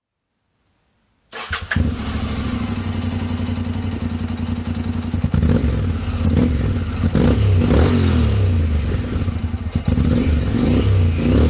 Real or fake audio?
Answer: real